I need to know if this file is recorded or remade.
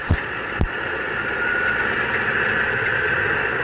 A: remade